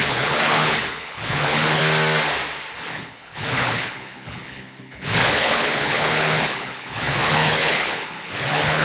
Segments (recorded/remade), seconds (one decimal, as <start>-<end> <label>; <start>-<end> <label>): 0.0-1.8 remade; 1.8-2.8 recorded; 2.8-8.8 remade